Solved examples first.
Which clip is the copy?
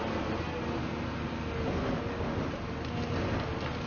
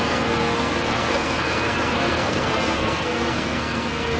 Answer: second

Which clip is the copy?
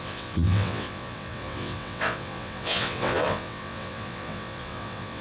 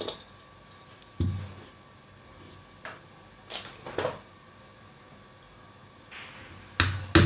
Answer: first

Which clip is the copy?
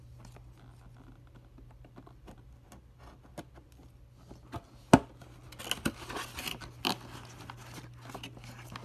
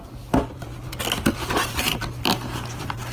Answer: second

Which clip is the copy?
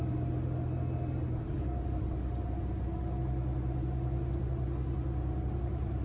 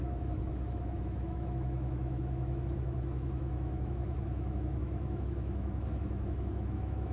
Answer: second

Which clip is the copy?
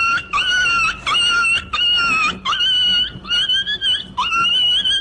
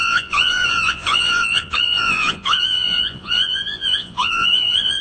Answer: second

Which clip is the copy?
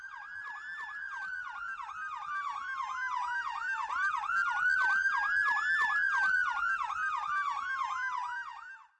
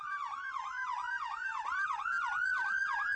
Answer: second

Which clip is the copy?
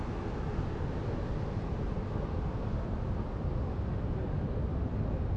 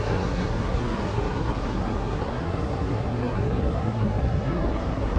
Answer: second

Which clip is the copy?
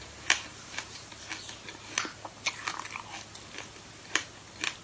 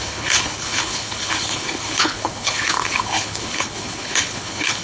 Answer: second